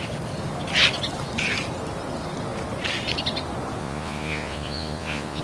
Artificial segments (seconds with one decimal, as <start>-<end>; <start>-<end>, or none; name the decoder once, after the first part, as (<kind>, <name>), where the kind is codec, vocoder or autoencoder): 3.8-5.4 (vocoder, Vocos)